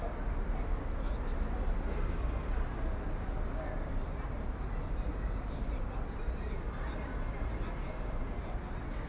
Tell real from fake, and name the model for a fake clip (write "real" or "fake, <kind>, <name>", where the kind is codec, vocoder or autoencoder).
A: real